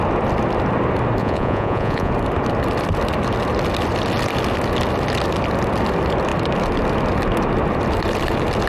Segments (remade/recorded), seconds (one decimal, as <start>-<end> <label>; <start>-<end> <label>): 0.0-1.2 recorded; 1.2-2.1 remade; 2.1-8.7 recorded